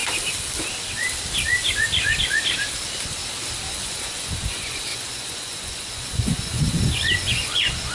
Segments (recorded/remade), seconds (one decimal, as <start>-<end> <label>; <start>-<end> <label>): 0.0-3.7 recorded; 3.7-7.9 remade

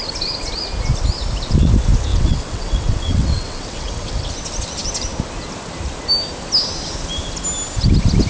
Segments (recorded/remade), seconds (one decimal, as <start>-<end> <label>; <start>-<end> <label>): 0.0-2.1 recorded; 2.1-4.3 remade; 4.3-8.3 recorded